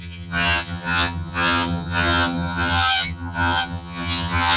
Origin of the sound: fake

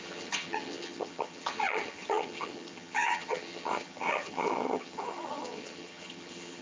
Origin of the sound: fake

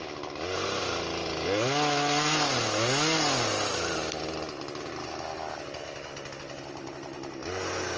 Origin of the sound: real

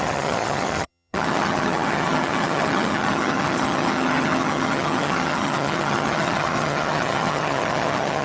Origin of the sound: fake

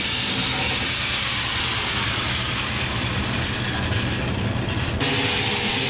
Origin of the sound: real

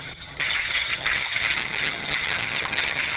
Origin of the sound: fake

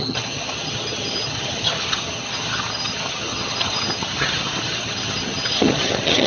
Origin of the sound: fake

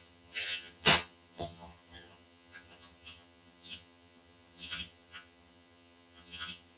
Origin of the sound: fake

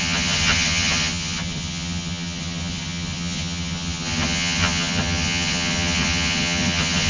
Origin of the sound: fake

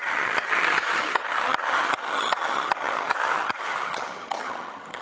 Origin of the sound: fake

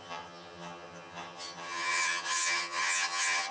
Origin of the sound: fake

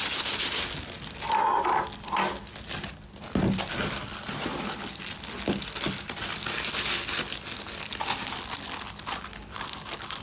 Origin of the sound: real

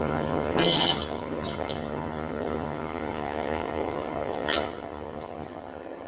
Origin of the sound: fake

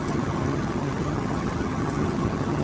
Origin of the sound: fake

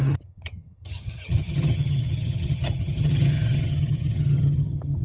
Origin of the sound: fake